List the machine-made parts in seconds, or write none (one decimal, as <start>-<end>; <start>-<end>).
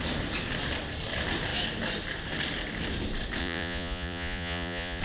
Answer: 3.4-5.0